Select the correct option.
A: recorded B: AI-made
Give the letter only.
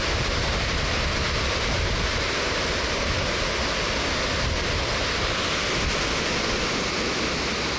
A